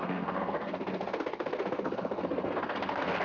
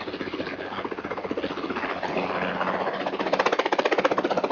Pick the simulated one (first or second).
first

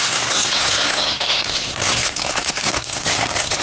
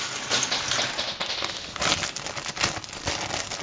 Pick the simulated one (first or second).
first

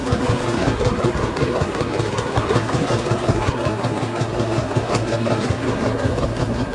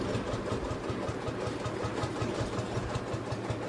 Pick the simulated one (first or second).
first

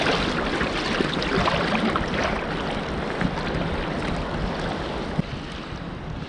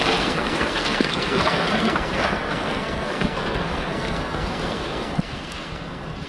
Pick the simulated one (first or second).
second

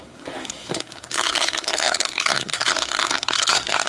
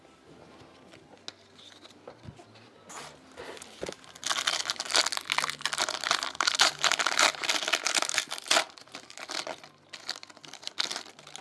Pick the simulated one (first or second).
first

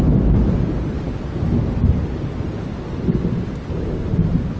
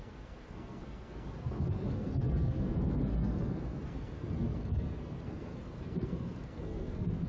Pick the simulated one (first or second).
second